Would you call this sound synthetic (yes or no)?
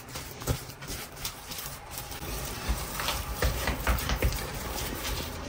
yes